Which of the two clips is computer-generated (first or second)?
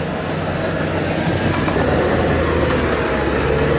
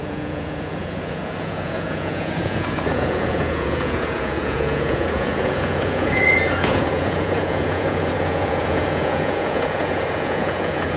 second